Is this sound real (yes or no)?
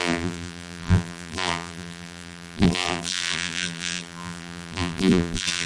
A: no